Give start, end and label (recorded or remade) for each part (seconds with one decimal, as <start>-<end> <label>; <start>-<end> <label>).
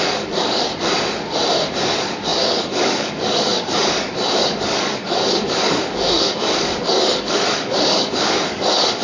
0.0-0.7 remade; 0.7-1.7 recorded; 1.7-9.0 remade